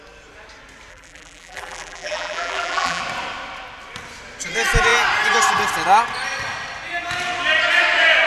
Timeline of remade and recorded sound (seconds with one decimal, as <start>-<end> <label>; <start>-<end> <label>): 0.0-0.9 recorded; 0.9-3.0 remade; 3.0-8.3 recorded